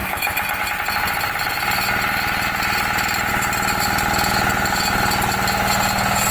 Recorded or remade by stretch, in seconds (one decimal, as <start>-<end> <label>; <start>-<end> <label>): 0.0-6.3 recorded